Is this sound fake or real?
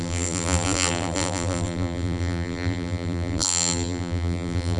fake